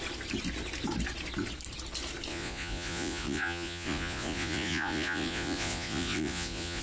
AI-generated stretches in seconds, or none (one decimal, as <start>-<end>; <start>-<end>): 2.3-6.8